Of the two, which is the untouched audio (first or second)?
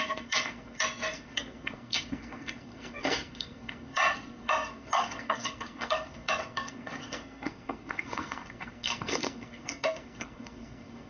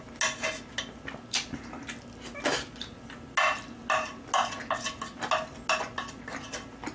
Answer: second